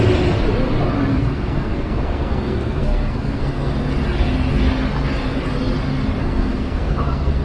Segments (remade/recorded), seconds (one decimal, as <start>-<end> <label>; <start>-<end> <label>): 0.0-1.1 recorded; 1.1-3.7 remade; 3.7-6.2 recorded; 6.2-7.4 remade

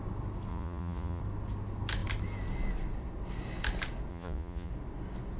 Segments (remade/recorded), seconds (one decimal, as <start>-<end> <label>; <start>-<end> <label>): 0.0-0.5 recorded; 0.5-1.2 remade; 1.2-4.1 recorded; 4.1-4.7 remade; 4.7-5.4 recorded

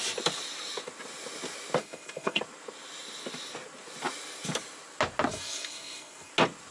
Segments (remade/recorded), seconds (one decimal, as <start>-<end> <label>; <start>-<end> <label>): 0.0-1.8 recorded; 1.8-2.4 remade; 2.4-5.3 recorded; 5.3-6.3 remade; 6.3-6.7 recorded

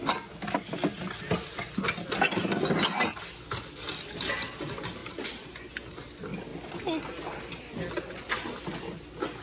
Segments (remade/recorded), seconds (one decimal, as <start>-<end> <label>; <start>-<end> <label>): 0.0-9.4 recorded

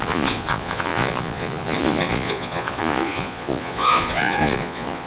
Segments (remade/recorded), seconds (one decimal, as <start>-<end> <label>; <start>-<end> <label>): 0.0-5.1 remade

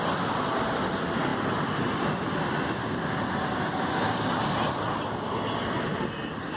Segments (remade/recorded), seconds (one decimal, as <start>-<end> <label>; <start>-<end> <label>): 0.0-6.6 recorded

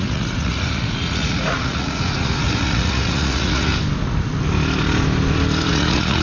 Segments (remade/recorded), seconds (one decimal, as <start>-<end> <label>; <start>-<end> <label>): 0.0-3.7 remade; 3.7-5.7 recorded; 5.7-6.2 remade

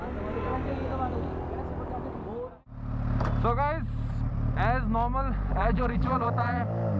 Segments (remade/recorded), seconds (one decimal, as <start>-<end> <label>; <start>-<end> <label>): 0.0-5.5 recorded; 5.5-6.6 remade; 6.6-7.0 recorded